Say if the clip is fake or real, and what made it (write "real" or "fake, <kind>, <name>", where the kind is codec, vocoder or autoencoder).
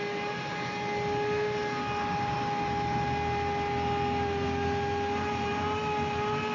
real